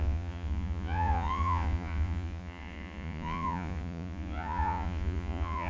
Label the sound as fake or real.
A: fake